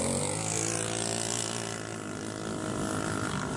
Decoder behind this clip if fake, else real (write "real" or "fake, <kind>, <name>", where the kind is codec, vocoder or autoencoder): real